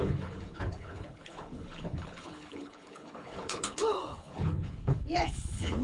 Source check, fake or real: fake